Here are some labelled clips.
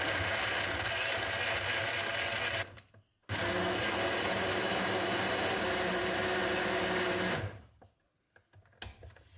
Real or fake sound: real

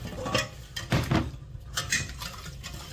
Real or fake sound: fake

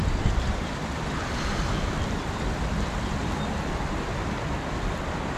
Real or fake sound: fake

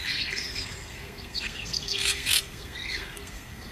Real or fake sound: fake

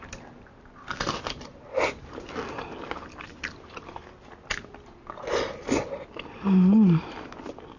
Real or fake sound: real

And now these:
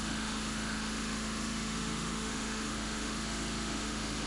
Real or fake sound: fake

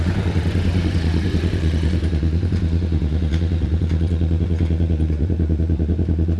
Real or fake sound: fake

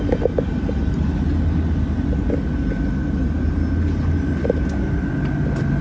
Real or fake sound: real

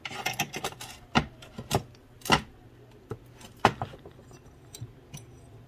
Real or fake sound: real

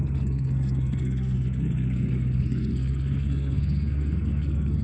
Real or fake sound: fake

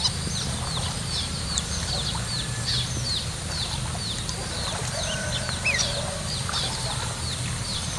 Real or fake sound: real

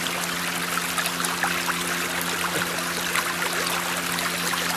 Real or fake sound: real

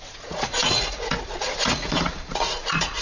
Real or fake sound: fake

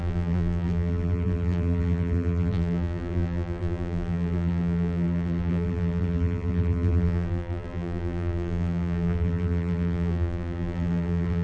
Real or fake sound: fake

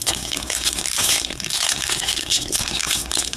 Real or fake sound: fake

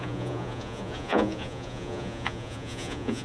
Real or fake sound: fake